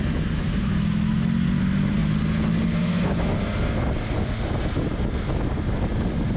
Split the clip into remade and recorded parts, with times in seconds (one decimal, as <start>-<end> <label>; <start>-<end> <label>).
0.0-6.4 recorded